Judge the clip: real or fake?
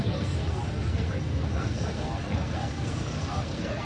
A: fake